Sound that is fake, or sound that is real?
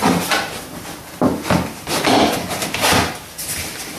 real